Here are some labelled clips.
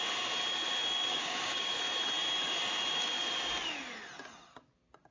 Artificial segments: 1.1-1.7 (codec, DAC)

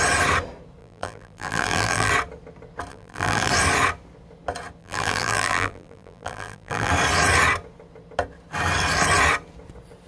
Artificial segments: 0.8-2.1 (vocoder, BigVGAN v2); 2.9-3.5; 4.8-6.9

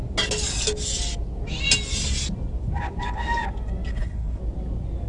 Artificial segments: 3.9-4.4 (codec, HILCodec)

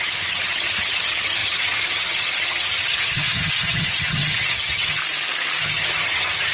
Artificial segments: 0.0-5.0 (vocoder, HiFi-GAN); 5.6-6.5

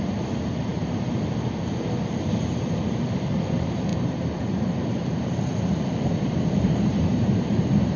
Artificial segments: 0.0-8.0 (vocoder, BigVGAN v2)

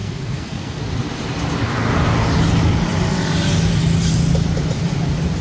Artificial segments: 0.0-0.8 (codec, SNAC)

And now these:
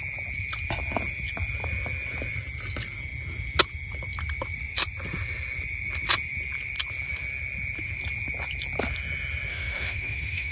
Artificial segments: 9.5-10.5 (autoencoder, DAC-VAE)

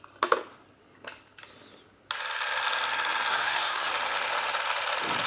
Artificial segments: 3.3-3.9 (codec, SNAC)